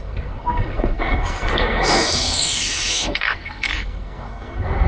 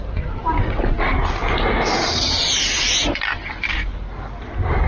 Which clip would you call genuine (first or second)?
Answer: second